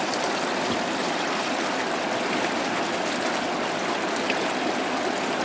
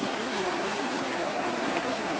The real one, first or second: first